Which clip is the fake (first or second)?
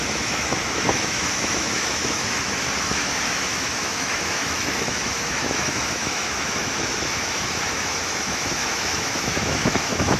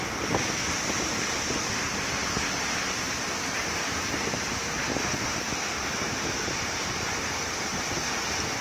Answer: first